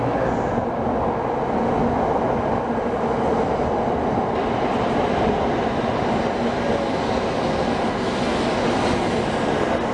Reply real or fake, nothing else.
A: real